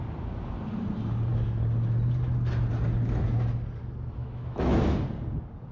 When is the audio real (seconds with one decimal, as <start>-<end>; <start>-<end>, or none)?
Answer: 0.0-4.2; 4.8-5.7